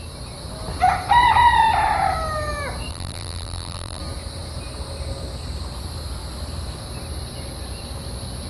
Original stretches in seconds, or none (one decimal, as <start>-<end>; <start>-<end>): 0.0-2.9; 4.0-8.5